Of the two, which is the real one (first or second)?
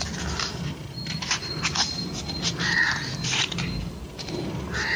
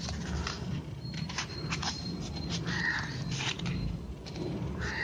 first